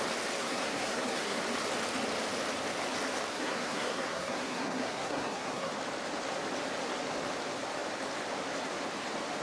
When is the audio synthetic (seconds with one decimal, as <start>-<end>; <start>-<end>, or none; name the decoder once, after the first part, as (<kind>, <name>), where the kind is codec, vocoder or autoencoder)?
0.4-1.4 (codec, SNAC); 3.3-5.7